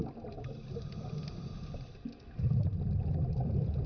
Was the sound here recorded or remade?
recorded